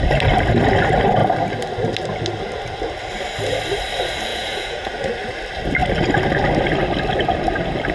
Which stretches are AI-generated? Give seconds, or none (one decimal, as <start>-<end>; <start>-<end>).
4.3-4.9